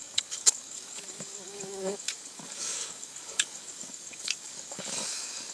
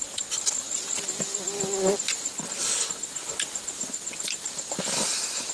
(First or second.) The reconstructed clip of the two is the first